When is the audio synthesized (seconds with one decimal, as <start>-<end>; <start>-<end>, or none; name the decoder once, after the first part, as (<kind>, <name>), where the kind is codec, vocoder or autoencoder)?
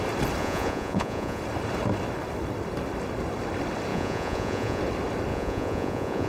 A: 0.4-1.4 (vocoder, Vocos); 3.9-4.8; 5.3-6.3